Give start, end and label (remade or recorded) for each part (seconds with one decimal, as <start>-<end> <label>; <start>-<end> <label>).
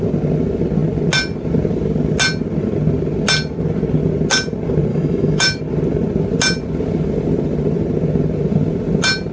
0.0-4.9 recorded; 4.9-5.6 remade; 5.6-9.3 recorded